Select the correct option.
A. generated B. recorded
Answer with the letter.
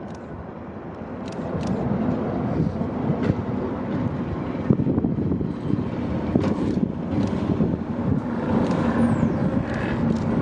B